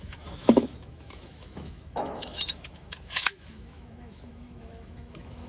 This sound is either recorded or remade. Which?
remade